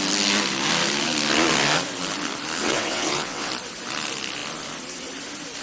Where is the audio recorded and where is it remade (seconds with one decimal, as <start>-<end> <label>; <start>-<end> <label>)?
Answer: 0.0-2.6 recorded; 2.6-3.5 remade; 3.5-5.6 recorded